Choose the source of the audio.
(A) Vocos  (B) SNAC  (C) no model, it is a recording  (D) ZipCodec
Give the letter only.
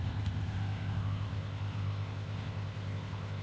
D